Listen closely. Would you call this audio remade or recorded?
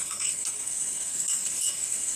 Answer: remade